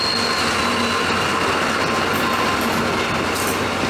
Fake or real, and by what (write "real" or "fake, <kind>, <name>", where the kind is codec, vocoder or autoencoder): real